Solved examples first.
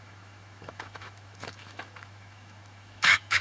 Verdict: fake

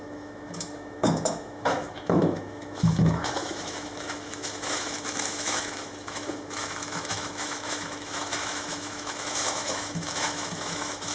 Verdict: fake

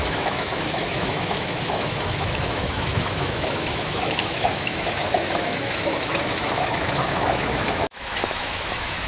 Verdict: fake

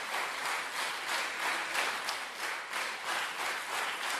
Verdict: real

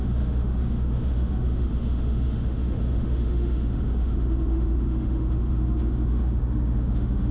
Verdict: fake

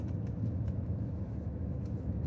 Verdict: fake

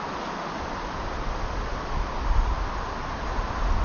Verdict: real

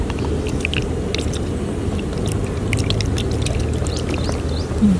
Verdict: real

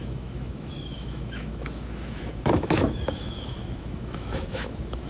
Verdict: fake